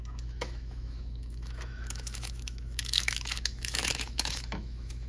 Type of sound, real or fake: fake